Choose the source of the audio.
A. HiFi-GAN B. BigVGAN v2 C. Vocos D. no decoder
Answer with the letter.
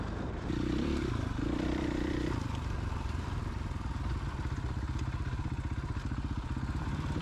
B